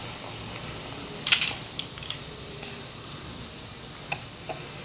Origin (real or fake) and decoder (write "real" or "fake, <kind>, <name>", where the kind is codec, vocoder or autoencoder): real